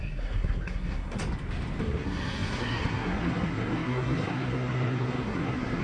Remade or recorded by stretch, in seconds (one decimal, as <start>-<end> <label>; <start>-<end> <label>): 0.0-1.2 remade; 1.2-1.8 recorded; 1.8-5.8 remade